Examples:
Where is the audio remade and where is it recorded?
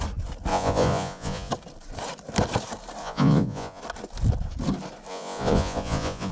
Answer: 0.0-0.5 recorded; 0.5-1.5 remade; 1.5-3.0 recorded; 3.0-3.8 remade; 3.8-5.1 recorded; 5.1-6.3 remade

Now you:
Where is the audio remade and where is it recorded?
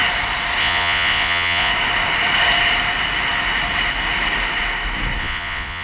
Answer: 0.0-0.6 recorded; 0.6-1.7 remade; 1.7-5.2 recorded; 5.2-5.8 remade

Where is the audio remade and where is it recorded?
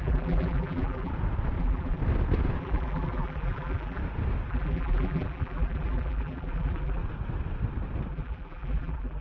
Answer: 0.0-1.1 remade; 1.1-1.6 recorded; 1.6-2.0 remade; 2.0-2.6 recorded; 2.6-4.0 remade; 4.0-4.5 recorded; 4.5-7.0 remade; 7.0-8.1 recorded; 8.1-9.2 remade